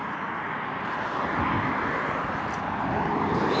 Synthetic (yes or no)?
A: no